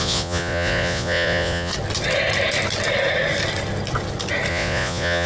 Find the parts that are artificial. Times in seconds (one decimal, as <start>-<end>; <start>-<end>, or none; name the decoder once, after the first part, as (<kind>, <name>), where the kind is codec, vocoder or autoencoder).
0.0-1.7 (vocoder, Vocos); 4.5-5.3